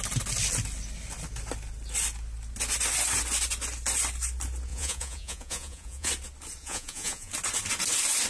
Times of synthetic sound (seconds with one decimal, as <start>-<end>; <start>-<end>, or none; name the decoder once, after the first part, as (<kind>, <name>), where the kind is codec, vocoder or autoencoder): 4.7-6.1 (vocoder, Vocos); 6.6-7.3